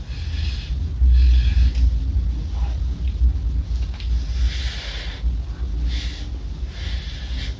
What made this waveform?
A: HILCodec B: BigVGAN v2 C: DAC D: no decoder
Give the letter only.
D